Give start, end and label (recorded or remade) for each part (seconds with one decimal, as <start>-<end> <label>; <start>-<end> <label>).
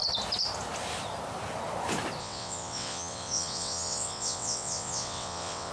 0.0-2.2 recorded; 2.2-5.7 remade